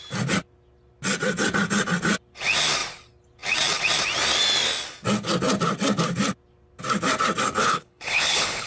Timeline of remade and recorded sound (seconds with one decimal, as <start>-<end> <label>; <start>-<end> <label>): 0.0-7.6 recorded; 7.6-8.7 remade